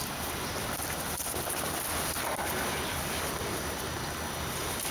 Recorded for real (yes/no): yes